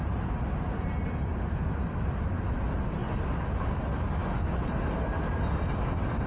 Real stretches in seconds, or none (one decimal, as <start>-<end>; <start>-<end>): 0.0-6.3